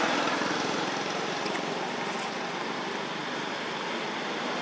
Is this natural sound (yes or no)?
yes